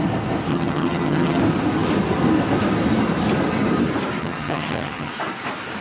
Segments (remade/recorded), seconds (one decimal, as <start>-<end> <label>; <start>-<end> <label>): 0.0-0.5 recorded; 0.5-1.4 remade; 1.4-4.2 recorded; 4.2-5.1 remade; 5.1-5.8 recorded